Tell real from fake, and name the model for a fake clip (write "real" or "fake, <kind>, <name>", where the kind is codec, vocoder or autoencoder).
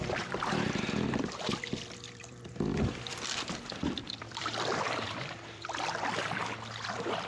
fake, vocoder, BigVGAN v2